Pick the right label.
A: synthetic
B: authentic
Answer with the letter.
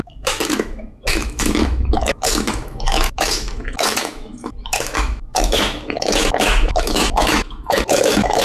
A